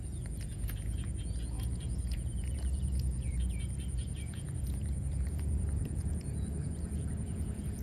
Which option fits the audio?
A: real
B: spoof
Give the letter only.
B